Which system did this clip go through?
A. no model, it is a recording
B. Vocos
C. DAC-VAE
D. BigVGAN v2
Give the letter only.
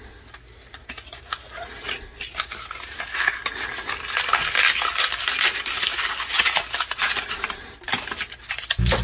A